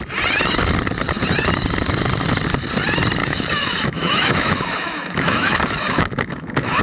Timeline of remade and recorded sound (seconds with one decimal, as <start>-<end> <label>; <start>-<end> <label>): 0.0-3.2 recorded; 3.2-6.8 remade